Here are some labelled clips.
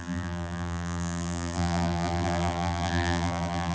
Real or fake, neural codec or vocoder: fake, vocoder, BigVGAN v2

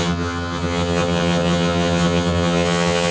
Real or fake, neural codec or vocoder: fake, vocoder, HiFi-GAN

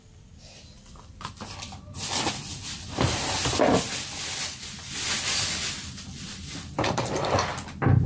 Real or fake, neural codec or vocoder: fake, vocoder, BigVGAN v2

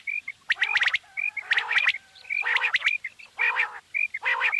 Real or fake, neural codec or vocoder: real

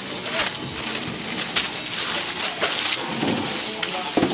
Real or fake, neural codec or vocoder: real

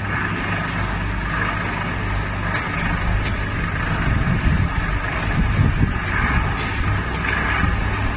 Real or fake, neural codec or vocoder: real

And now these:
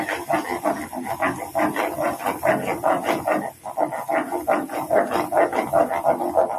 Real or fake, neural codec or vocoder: real